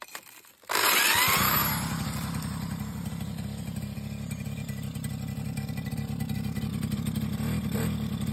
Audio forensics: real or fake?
real